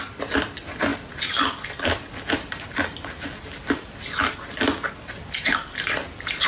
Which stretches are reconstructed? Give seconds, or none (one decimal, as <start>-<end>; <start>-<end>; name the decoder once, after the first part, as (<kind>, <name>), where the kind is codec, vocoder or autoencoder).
none